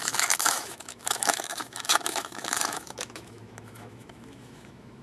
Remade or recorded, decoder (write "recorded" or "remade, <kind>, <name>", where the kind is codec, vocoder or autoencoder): remade, autoencoder, DAC-VAE